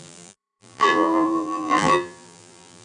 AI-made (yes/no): yes